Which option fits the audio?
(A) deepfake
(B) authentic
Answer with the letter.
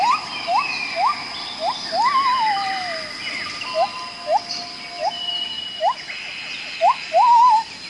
B